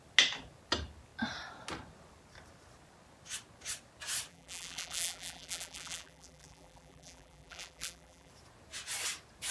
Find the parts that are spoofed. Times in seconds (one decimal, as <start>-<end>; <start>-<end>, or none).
4.3-8.3